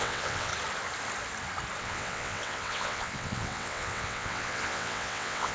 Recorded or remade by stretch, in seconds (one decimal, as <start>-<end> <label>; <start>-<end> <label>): 0.0-0.5 remade; 0.5-1.8 recorded; 1.8-5.5 remade

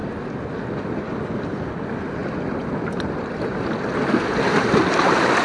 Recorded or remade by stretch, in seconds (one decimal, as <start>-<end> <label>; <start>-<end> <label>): 0.0-1.7 remade; 1.7-2.2 recorded; 2.2-2.7 remade; 2.7-5.4 recorded